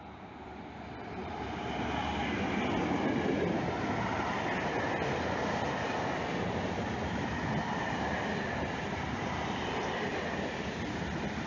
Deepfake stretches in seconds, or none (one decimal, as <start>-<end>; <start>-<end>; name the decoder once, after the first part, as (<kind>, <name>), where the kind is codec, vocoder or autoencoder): 1.2-2.0 (vocoder, BigVGAN v2)